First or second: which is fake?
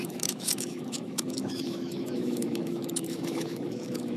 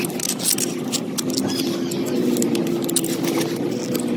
first